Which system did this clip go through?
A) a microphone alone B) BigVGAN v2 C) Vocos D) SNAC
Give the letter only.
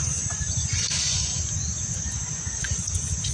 C